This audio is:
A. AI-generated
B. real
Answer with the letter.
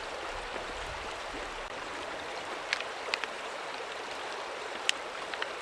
A